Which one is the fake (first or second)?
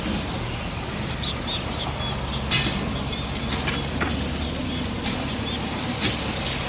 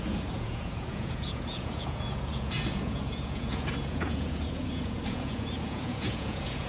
second